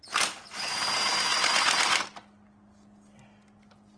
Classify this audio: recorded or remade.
recorded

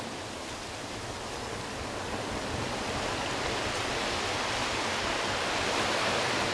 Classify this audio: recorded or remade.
recorded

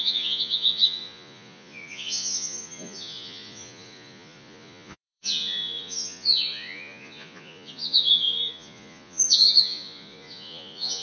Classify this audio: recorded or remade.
remade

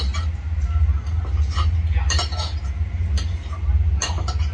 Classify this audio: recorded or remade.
recorded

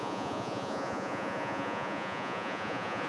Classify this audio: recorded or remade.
remade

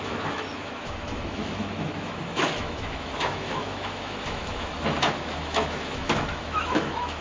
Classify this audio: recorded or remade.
remade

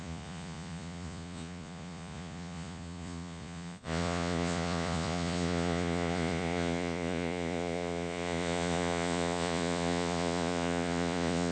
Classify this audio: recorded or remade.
remade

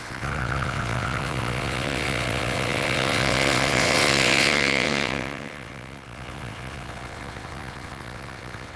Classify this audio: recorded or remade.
remade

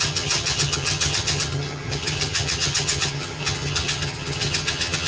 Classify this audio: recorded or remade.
remade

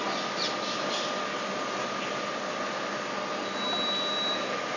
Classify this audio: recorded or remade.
recorded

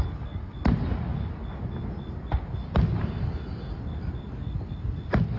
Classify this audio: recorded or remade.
recorded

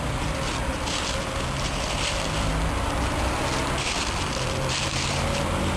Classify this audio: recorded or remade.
recorded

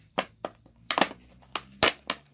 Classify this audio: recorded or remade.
recorded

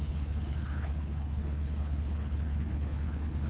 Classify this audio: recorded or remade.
remade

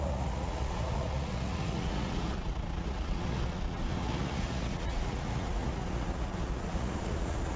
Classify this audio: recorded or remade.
remade